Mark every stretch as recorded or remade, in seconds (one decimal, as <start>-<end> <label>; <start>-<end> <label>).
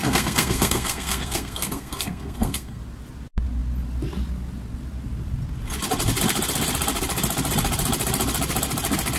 0.0-2.8 remade; 2.8-9.2 recorded